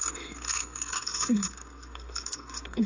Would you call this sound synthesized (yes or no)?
yes